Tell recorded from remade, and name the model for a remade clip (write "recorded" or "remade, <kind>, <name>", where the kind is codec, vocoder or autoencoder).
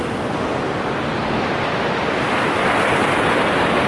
recorded